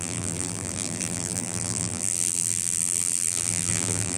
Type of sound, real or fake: fake